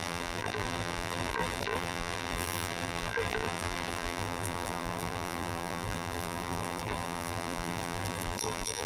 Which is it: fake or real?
fake